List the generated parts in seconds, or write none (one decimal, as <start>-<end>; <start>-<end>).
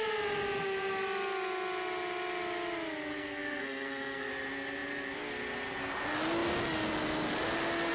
3.1-4.3